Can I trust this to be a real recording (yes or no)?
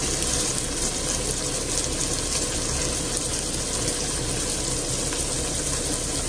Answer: yes